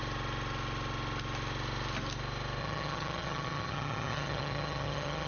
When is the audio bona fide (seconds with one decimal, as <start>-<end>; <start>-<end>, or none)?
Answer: 0.0-2.6